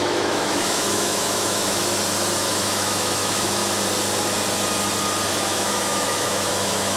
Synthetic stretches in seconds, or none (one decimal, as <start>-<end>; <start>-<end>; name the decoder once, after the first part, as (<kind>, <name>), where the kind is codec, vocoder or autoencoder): 0.0-1.8 (autoencoder, DAC-VAE); 2.4-3.6; 5.3-7.0